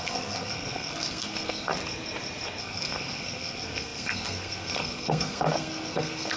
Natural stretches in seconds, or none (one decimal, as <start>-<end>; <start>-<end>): 1.7-2.6